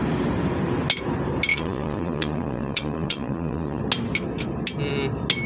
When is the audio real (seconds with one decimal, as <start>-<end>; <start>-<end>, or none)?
0.0-1.5; 3.8-5.5

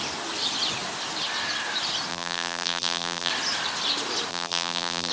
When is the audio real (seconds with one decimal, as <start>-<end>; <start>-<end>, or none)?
0.0-2.1; 3.3-4.3

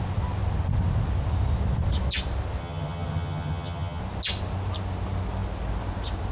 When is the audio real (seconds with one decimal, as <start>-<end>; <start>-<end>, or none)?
0.0-2.6; 4.0-6.3

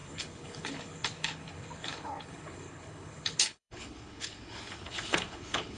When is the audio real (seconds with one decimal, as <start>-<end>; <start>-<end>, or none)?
none

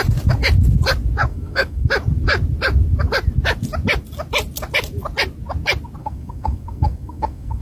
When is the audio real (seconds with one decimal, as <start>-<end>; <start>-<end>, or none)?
0.0-1.3; 1.9-6.0

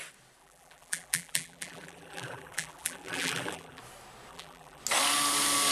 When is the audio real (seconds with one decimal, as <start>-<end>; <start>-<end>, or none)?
0.0-0.4; 3.8-4.3; 4.8-5.7

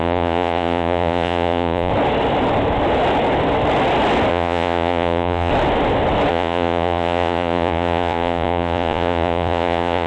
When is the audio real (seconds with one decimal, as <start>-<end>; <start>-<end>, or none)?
1.9-4.3; 5.5-6.3

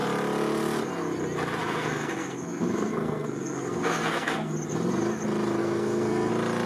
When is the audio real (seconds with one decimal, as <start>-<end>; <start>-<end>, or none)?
0.0-1.6; 4.5-5.6; 6.3-6.7